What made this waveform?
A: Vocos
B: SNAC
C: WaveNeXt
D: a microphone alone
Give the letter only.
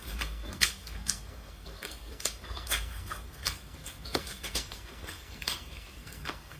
B